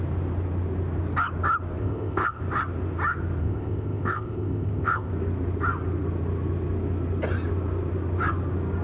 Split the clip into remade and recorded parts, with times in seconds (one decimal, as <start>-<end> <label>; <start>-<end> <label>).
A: 0.0-1.8 recorded; 1.8-2.4 remade; 2.4-3.4 recorded; 3.4-5.1 remade; 5.1-8.8 recorded